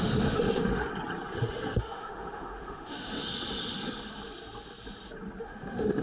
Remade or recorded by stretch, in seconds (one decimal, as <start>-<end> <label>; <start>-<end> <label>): 0.0-0.9 remade; 0.9-1.8 recorded; 1.8-3.2 remade; 3.2-5.4 recorded; 5.4-6.0 remade